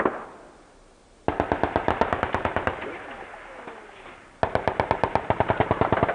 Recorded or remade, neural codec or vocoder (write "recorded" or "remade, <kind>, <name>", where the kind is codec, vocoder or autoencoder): recorded